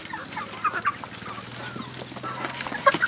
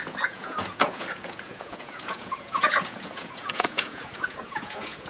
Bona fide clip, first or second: first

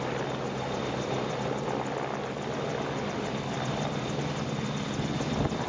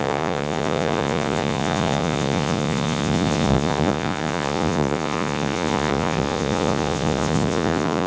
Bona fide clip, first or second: first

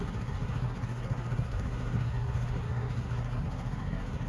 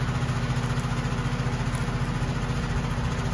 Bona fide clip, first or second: second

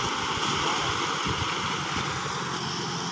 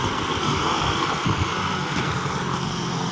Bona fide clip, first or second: first